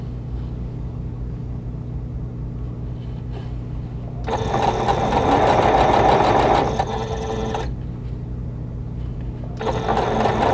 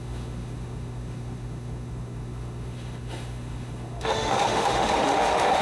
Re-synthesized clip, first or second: second